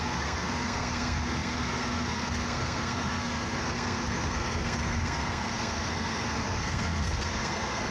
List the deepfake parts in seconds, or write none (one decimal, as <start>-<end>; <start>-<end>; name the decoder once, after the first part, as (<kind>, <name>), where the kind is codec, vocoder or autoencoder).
0.0-7.9 (codec, SNAC)